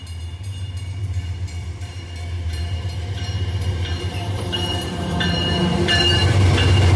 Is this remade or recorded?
remade